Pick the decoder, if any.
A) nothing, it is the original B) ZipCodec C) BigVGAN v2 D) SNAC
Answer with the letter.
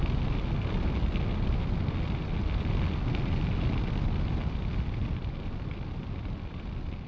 A